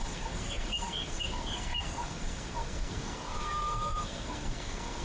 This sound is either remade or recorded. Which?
remade